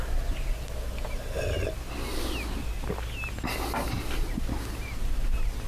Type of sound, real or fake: real